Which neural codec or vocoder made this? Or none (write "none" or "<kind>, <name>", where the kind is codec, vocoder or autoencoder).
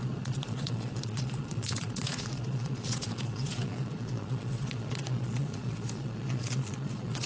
vocoder, Vocos